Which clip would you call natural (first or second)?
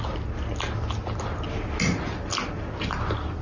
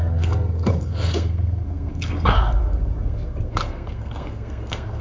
first